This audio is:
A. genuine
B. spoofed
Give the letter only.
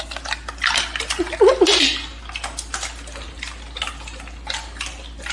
A